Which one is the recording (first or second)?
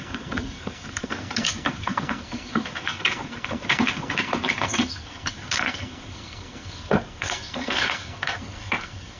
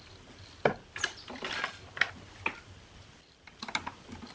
second